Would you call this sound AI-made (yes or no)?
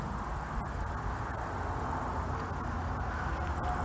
no